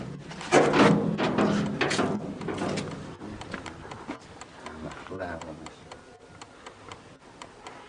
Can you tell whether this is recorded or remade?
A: recorded